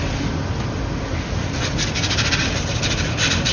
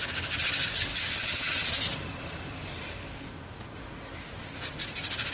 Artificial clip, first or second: first